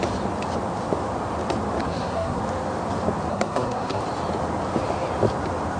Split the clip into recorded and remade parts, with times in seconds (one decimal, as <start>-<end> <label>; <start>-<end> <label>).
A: 0.0-1.8 recorded; 1.8-2.4 remade; 2.4-3.3 recorded; 3.3-4.0 remade; 4.0-5.8 recorded